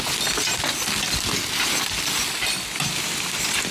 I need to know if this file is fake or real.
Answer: real